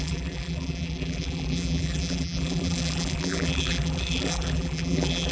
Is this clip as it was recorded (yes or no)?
no